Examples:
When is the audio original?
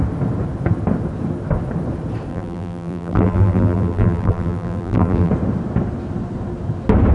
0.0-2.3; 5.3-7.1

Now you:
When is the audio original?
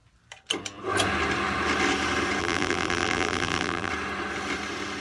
0.0-2.4; 3.9-5.0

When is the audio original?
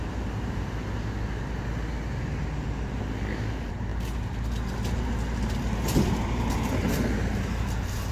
0.0-8.1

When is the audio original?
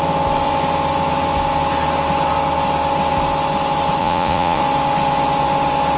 0.0-4.0; 4.6-6.0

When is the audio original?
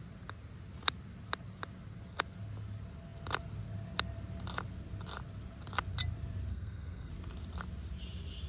0.0-6.5; 7.1-8.5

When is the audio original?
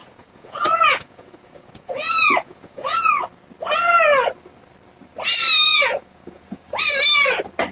3.1-5.7; 6.8-7.7